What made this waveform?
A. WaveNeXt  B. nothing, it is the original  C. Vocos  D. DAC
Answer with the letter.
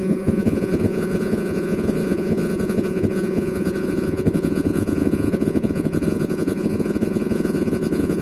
C